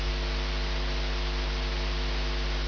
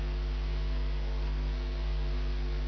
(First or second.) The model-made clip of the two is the second